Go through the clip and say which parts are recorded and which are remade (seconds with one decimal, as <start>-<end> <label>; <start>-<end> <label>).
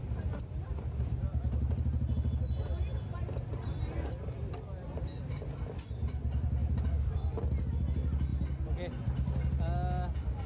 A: 0.0-10.5 recorded